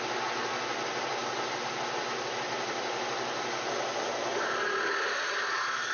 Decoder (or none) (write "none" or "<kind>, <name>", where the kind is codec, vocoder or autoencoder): none